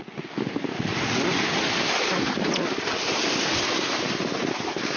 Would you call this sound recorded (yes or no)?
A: yes